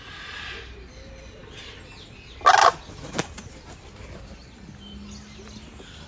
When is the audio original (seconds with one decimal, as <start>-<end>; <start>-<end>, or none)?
0.0-6.1